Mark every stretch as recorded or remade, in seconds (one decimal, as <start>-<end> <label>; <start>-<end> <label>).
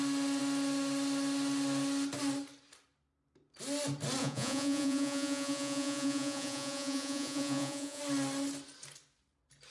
0.0-4.2 recorded; 4.2-8.0 remade; 8.0-9.7 recorded